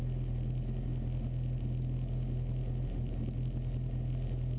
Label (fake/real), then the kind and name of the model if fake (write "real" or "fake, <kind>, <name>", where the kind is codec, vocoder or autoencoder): real